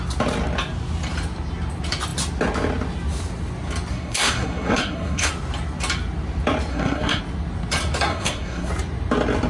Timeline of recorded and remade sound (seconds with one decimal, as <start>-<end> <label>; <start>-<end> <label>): 0.0-3.9 recorded; 3.9-5.3 remade; 5.3-6.7 recorded; 6.7-7.2 remade; 7.2-8.1 recorded; 8.1-8.7 remade; 8.7-9.5 recorded